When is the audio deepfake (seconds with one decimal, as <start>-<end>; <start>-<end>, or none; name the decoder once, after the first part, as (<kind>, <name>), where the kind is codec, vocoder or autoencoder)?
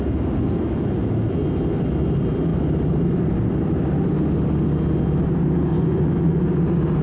5.7-6.4 (vocoder, Vocos)